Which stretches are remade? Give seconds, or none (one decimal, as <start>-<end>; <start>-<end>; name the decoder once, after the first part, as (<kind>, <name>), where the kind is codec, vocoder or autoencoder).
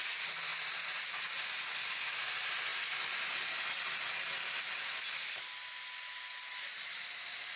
none